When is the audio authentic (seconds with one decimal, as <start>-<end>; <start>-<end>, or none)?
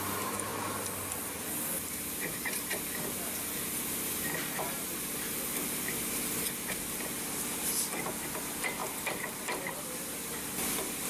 0.0-8.8; 9.3-11.1